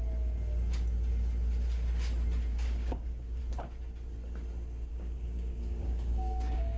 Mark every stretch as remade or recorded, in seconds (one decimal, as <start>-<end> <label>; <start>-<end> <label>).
0.0-2.5 recorded; 2.5-3.4 remade; 3.4-4.9 recorded; 4.9-6.8 remade